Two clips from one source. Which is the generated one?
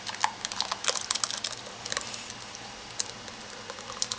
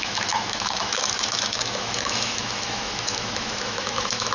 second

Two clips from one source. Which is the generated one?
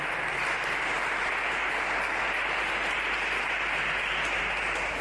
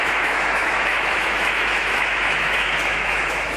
second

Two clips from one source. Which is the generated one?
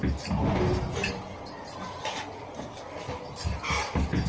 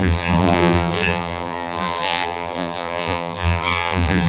second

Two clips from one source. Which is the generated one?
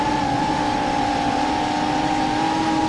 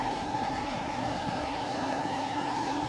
second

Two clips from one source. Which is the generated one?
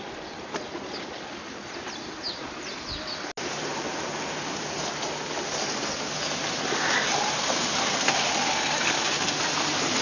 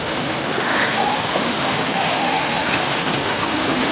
second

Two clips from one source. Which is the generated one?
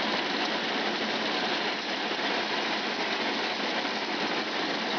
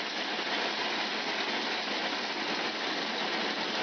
first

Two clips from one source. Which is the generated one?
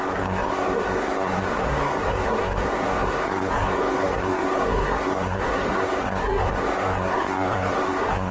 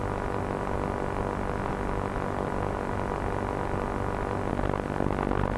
first